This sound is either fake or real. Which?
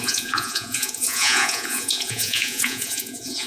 fake